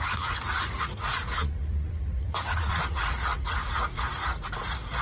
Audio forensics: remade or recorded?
remade